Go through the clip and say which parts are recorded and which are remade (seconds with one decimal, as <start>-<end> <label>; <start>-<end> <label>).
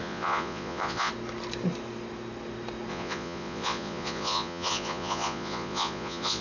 0.0-1.1 remade; 1.1-2.9 recorded; 2.9-6.4 remade